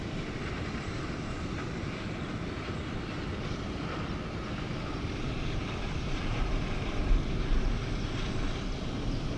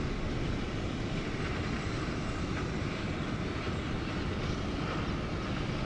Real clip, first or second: second